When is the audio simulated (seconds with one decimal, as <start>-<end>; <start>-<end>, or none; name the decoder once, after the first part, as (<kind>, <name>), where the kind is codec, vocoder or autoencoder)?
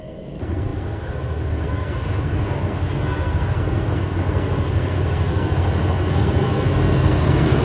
0.0-7.6 (codec, SNAC)